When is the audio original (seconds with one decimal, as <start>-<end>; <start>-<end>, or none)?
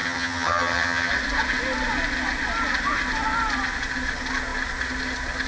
1.1-5.5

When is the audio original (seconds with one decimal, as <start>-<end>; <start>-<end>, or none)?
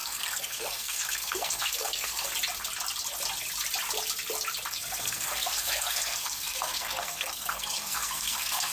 2.3-4.7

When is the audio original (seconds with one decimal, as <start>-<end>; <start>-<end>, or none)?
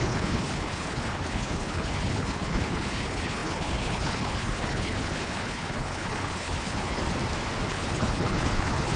7.0-7.7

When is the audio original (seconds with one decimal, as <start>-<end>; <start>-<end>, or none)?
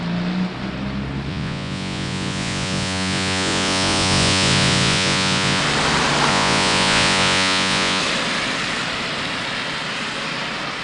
0.0-1.3; 5.6-6.3; 8.0-10.8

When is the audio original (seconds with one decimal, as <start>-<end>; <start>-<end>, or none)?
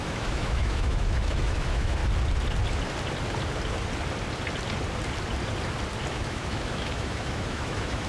2.0-6.1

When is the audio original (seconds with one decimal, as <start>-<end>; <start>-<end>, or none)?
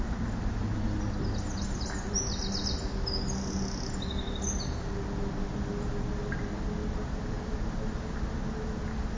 0.0-9.2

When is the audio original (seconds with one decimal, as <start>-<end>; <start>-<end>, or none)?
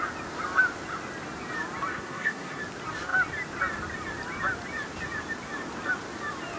0.0-1.9; 2.6-6.6